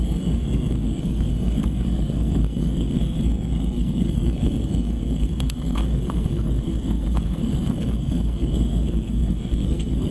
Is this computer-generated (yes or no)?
yes